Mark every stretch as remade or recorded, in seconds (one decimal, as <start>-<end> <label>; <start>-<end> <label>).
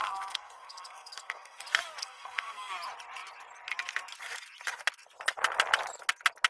0.0-1.6 remade; 1.6-2.0 recorded; 2.0-2.7 remade; 2.7-6.5 recorded